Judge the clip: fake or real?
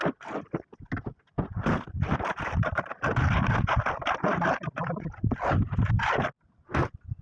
real